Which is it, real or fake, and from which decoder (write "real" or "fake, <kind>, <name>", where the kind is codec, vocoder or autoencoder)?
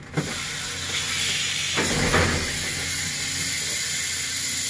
real